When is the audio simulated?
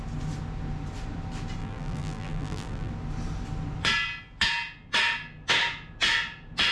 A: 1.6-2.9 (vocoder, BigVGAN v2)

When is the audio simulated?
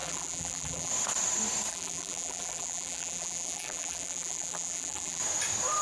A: 0.0-0.9 (vocoder, BigVGAN v2); 1.7-5.2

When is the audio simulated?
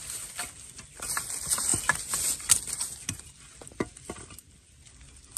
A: none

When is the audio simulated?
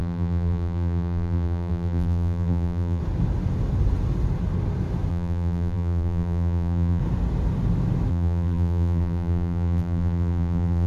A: 0.0-3.0 (vocoder, BigVGAN v2); 5.1-7.0; 8.1-10.9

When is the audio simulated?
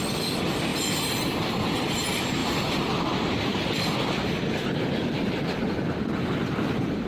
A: 0.0-0.7 (vocoder, BigVGAN v2); 1.2-2.4; 4.9-7.1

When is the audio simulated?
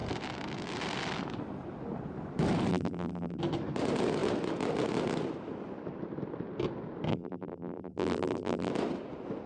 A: 2.7-3.4 (vocoder, BigVGAN v2); 7.1-8.7